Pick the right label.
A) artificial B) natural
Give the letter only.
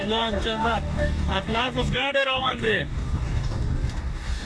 A